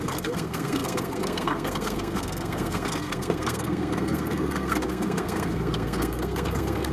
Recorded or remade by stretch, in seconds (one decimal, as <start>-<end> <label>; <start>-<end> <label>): 0.0-6.9 remade